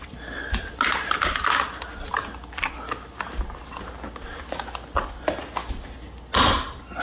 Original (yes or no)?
yes